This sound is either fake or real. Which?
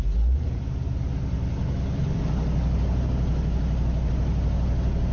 real